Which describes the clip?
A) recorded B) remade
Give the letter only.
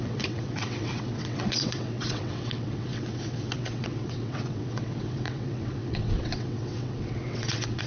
B